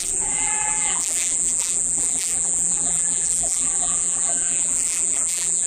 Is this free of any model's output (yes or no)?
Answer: no